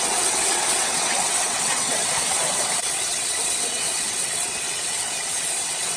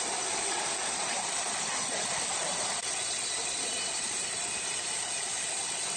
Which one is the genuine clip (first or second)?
second